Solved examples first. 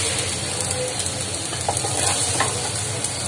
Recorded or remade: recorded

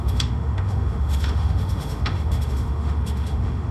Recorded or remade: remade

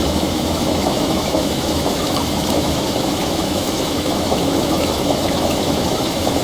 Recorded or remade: remade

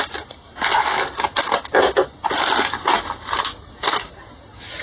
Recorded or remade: recorded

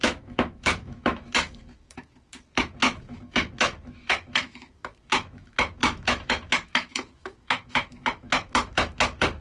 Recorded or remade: remade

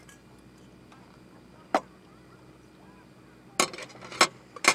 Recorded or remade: recorded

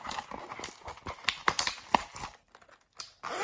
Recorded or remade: recorded